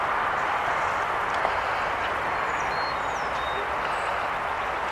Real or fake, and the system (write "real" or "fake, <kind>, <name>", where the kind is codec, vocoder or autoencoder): real